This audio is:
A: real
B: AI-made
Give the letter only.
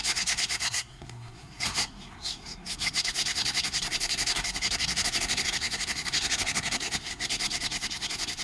B